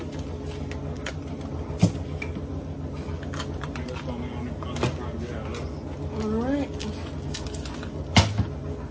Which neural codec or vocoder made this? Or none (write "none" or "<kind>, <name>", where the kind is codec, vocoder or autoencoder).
none